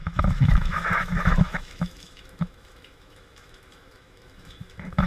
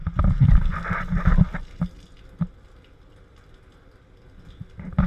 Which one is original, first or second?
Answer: second